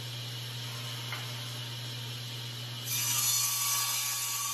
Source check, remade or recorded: recorded